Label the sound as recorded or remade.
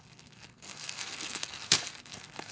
remade